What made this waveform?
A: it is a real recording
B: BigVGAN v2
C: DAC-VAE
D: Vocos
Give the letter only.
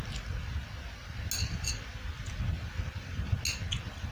A